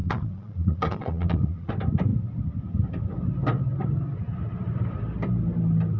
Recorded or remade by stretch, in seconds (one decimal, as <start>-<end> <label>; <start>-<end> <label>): 0.0-1.7 remade; 1.7-6.0 recorded